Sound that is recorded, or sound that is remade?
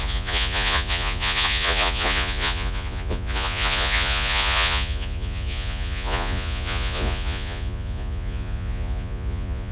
remade